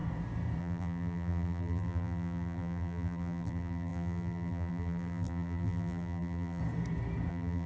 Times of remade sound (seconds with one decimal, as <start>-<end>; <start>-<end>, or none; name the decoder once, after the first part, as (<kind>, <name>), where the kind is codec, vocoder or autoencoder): 0.6-6.6 (vocoder, BigVGAN v2); 7.3-7.7